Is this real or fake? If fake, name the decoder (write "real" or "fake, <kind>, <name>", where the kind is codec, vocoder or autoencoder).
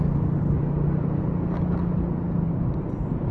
real